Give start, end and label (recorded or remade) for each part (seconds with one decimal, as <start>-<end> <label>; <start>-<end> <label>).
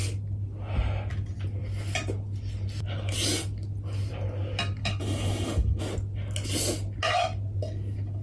0.0-4.8 recorded; 4.8-5.8 remade; 5.8-8.2 recorded